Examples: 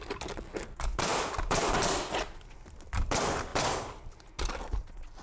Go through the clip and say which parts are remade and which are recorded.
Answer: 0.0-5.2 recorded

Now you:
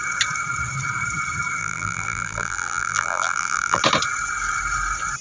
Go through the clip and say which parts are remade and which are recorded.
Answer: 0.0-1.6 recorded; 1.6-3.8 remade; 3.8-5.2 recorded

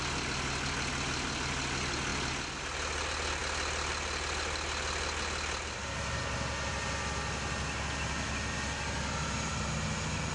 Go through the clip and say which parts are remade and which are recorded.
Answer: 0.0-10.3 recorded

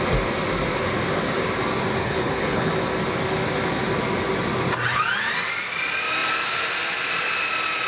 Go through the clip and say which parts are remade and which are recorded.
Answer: 0.0-2.0 recorded; 2.0-2.7 remade; 2.7-7.9 recorded